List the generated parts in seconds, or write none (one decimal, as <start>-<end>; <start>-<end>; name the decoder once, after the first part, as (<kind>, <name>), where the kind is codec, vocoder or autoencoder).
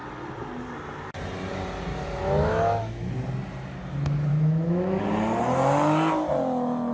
2.4-3.1 (autoencoder, DAC-VAE); 4.3-5.0